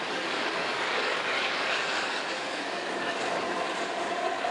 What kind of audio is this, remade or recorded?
remade